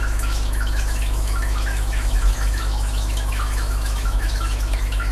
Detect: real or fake fake